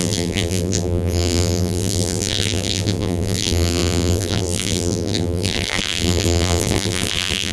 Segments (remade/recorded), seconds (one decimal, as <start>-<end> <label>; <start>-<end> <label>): 0.0-7.5 remade